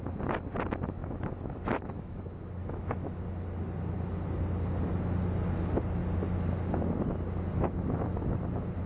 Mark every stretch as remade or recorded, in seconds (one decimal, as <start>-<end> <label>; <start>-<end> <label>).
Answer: 0.0-1.0 recorded; 1.0-2.2 remade; 2.2-2.6 recorded; 2.6-3.2 remade; 3.2-8.9 recorded